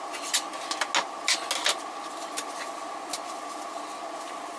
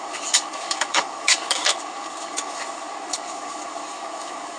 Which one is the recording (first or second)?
first